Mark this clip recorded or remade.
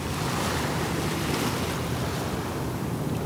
recorded